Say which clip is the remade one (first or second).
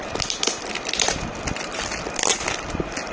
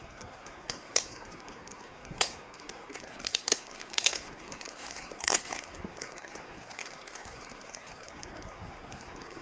second